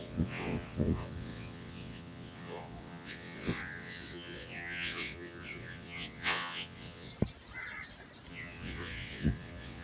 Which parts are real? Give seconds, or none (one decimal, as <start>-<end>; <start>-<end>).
7.1-8.3